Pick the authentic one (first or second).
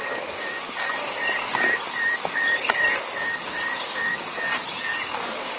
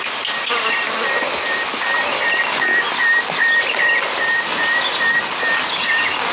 second